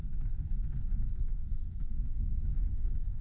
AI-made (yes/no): yes